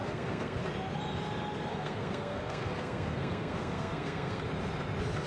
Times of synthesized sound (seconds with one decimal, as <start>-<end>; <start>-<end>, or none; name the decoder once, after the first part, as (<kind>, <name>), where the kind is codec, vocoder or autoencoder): 0.0-0.6 (codec, SNAC); 1.7-4.4